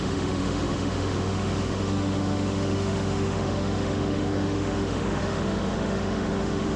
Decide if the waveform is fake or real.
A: fake